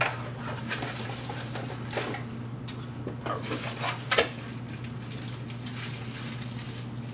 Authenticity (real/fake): real